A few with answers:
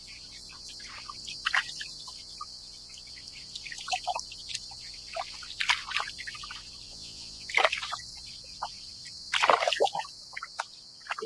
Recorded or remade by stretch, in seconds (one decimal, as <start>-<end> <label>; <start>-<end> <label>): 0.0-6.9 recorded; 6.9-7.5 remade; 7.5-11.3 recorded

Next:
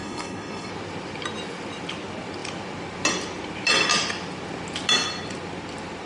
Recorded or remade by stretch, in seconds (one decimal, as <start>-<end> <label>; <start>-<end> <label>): 0.0-0.7 remade; 0.7-6.1 recorded

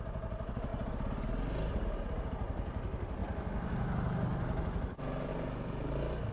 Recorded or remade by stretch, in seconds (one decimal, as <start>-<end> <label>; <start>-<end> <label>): 0.0-6.3 recorded

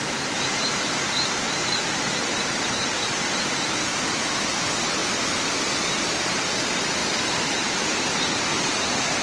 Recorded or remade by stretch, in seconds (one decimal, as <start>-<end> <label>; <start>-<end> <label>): 0.0-5.0 recorded; 5.0-6.2 remade; 6.2-7.0 recorded; 7.0-8.4 remade; 8.4-9.2 recorded

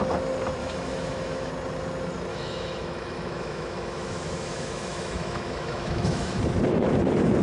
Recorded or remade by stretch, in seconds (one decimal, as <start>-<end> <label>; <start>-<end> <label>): 0.0-0.6 recorded; 0.6-1.5 remade; 1.5-2.3 recorded; 2.3-6.4 remade; 6.4-7.4 recorded

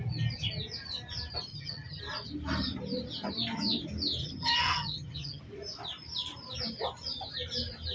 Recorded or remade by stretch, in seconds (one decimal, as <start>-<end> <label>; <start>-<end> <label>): 0.0-1.5 recorded; 1.5-2.0 remade; 2.0-4.2 recorded; 4.2-5.4 remade; 5.4-7.9 recorded

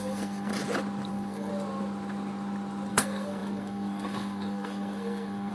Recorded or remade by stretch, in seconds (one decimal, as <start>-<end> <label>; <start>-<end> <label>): 0.0-0.5 remade; 0.5-1.1 recorded; 1.1-1.5 remade; 1.5-2.9 recorded; 2.9-5.5 remade